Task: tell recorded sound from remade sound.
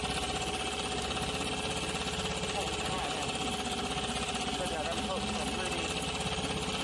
recorded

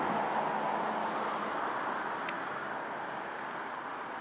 recorded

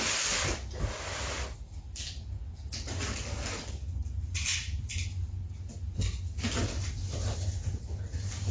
recorded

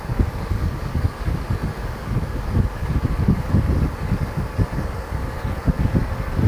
remade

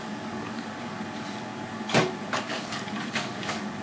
remade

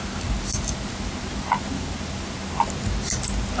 recorded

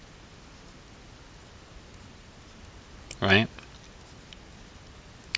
recorded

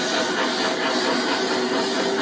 recorded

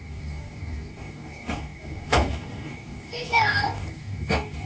remade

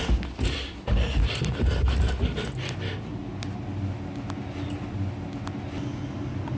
recorded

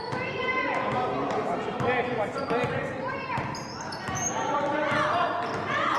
recorded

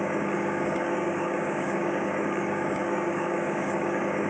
remade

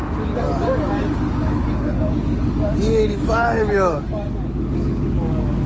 remade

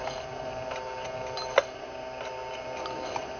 recorded